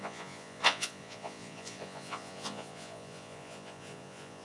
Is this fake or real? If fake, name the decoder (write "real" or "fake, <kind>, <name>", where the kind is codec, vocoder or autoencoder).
fake, vocoder, Vocos